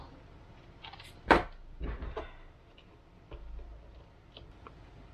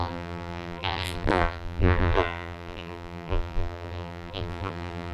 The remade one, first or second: second